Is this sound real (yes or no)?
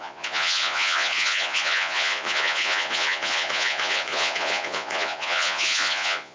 no